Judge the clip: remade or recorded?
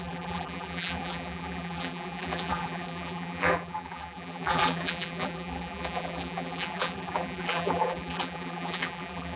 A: remade